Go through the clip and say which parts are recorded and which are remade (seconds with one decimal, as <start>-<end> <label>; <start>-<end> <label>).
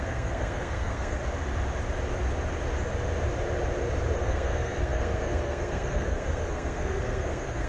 0.0-1.2 remade; 1.2-4.2 recorded; 4.2-7.7 remade